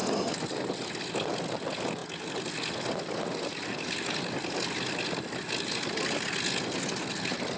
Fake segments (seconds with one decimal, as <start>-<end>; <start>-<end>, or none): none